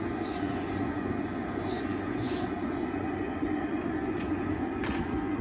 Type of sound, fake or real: fake